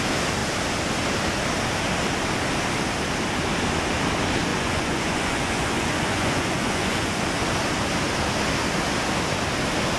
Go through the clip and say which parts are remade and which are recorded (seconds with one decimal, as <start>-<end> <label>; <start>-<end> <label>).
0.0-4.5 recorded; 4.5-7.2 remade; 7.2-10.0 recorded